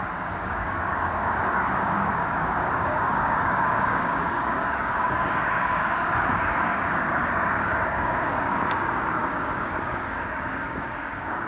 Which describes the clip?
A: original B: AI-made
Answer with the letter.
B